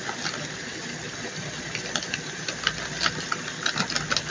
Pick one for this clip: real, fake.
real